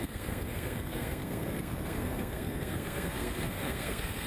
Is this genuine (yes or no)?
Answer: no